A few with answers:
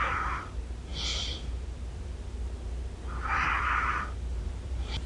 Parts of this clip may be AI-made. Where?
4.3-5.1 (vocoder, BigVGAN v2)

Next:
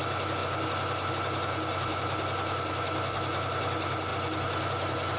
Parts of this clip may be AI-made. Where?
none

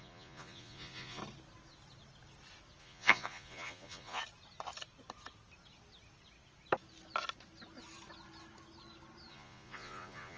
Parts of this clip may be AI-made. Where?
0.0-1.2 (vocoder, Vocos); 2.8-4.2; 9.3-10.4

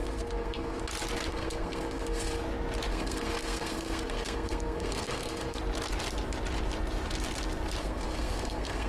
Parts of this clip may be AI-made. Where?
0.0-0.8 (codec, SNAC); 1.3-2.4; 2.9-5.6; 7.8-8.9

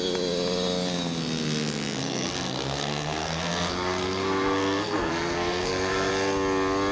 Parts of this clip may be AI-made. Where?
2.0-6.1 (codec, SNAC)

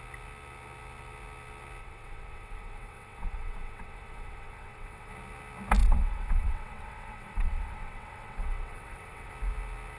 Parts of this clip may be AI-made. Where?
1.8-5.1 (vocoder, WaveNeXt); 5.8-9.3